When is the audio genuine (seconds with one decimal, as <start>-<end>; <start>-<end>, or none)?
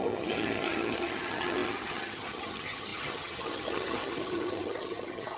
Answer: none